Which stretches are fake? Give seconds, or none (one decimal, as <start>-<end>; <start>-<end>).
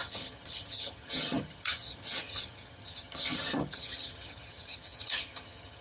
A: 0.0-5.8